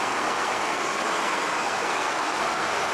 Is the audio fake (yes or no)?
yes